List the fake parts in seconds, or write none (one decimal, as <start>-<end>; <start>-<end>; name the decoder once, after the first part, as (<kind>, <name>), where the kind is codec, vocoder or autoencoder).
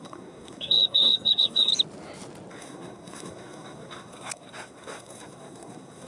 0.0-1.7 (codec, SNAC); 2.5-6.1